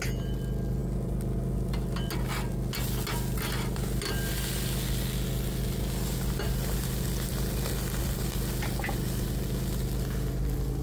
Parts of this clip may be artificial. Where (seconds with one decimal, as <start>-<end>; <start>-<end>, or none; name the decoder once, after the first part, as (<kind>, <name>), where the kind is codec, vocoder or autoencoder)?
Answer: none